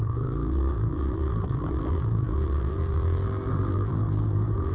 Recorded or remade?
remade